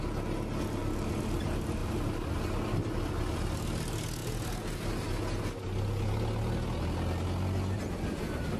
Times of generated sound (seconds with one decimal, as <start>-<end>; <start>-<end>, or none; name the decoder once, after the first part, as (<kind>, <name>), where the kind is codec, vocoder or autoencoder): 0.8-1.4 (vocoder, BigVGAN v2); 1.8-2.4